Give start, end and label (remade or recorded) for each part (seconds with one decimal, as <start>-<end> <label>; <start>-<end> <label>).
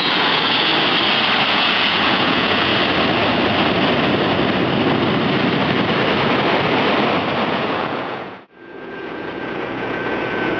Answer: 0.0-0.7 remade; 0.7-1.5 recorded; 1.5-2.7 remade; 2.7-7.5 recorded; 7.5-10.6 remade